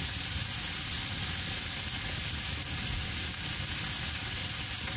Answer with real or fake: real